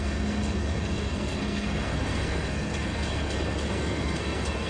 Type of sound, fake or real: fake